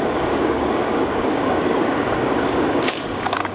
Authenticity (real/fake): fake